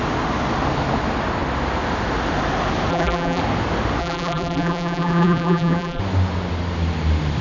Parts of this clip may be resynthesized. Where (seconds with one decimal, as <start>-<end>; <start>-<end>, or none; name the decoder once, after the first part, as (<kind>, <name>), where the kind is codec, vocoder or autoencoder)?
2.9-3.4 (vocoder, BigVGAN v2); 4.0-6.0